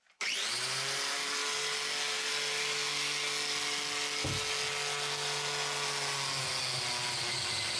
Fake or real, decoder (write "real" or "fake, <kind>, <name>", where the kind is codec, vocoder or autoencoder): real